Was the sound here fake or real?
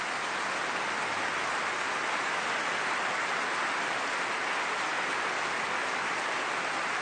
real